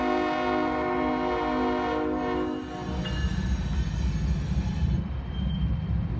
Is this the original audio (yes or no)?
yes